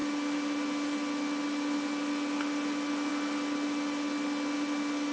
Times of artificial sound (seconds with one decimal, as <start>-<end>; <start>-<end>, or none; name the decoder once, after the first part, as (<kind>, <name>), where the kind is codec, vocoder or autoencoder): none